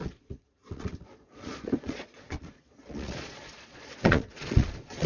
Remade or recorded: remade